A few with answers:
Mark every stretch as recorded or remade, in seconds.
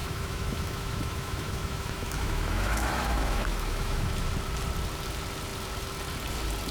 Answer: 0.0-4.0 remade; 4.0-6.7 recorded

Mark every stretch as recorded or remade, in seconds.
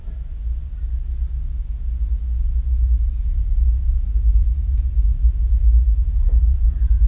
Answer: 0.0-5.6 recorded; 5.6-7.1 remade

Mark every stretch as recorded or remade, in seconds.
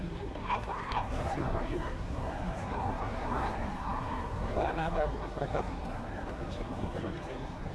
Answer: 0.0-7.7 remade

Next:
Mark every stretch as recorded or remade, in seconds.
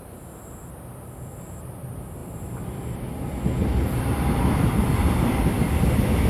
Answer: 0.0-2.2 recorded; 2.2-4.6 remade; 4.6-6.3 recorded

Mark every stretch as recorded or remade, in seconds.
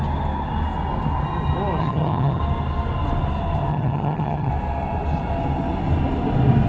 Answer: 0.0-1.8 recorded; 1.8-2.4 remade; 2.4-3.7 recorded; 3.7-4.5 remade; 4.5-6.7 recorded